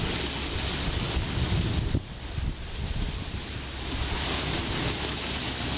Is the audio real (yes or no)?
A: yes